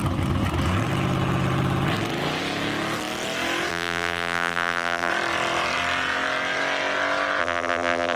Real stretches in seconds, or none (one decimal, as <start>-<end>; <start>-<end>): 0.0-3.7; 5.1-7.4